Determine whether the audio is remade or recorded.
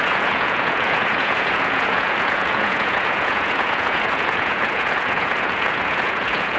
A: remade